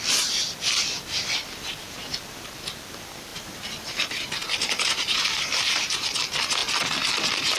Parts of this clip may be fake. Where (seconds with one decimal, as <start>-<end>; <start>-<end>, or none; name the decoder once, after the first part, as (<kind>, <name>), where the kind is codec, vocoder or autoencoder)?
3.3-5.9 (vocoder, BigVGAN v2)